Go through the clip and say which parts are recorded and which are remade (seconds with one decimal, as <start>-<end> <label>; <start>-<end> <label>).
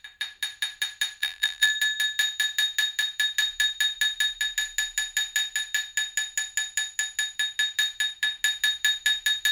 0.0-1.2 recorded; 1.2-1.7 remade; 1.7-9.5 recorded